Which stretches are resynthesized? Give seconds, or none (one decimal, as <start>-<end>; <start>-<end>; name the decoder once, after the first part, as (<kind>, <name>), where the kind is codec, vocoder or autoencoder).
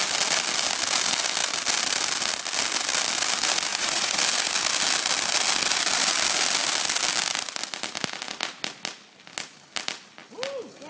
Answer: 3.7-4.2 (vocoder, Vocos)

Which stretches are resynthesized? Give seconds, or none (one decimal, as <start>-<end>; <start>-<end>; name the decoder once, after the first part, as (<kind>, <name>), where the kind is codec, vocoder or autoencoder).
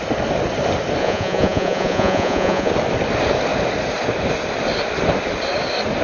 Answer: 1.0-2.7 (vocoder, Vocos)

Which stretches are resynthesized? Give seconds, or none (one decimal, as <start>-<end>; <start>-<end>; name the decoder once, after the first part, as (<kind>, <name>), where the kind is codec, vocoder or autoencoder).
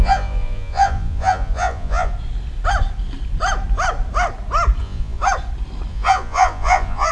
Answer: 0.0-2.1 (vocoder, Vocos); 4.8-5.2; 5.9-7.1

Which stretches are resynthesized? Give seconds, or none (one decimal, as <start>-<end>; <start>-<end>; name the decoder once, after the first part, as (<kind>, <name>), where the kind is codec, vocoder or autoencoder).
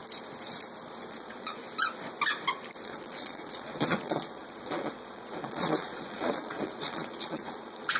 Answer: 1.1-1.6 (vocoder, Vocos); 2.8-8.0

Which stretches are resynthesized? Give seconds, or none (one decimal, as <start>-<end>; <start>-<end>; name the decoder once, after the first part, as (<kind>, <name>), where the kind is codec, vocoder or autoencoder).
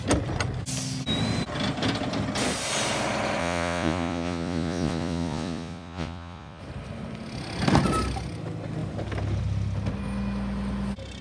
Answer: 3.4-6.6 (vocoder, Vocos)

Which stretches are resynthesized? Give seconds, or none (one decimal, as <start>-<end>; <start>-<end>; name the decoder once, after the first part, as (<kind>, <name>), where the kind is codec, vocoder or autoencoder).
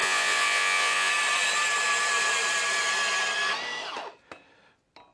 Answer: 0.0-1.1 (vocoder, Vocos)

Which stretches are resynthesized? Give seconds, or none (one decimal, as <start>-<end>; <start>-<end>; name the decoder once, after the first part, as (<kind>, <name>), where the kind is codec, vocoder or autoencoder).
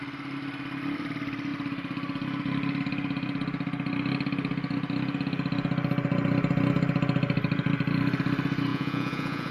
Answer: 8.7-9.5 (vocoder, Vocos)